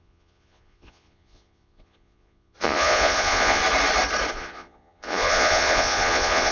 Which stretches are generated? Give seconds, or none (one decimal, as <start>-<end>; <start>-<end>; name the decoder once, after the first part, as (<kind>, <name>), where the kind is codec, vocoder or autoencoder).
0.0-3.6 (vocoder, Vocos); 4.3-6.5